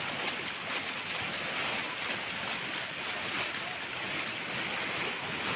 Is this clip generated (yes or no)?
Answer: no